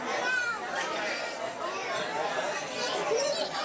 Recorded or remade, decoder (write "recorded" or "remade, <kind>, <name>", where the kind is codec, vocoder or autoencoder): remade, vocoder, BigVGAN v2